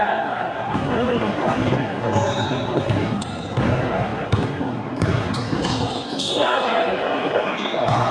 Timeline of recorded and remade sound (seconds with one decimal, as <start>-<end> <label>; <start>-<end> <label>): 0.0-8.1 remade